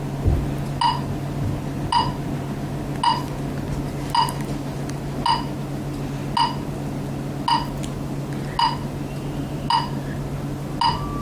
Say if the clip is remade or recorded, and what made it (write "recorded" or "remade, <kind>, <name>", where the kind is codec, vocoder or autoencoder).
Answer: recorded